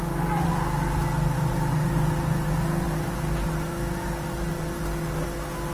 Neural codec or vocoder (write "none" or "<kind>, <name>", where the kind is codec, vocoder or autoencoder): none